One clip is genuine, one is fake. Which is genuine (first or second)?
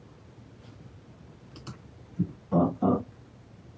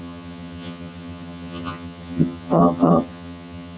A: first